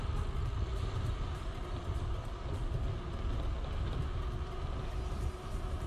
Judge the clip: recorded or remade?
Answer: recorded